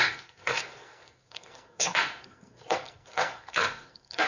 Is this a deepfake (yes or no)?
yes